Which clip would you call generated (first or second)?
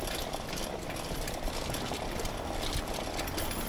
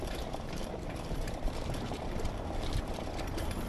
second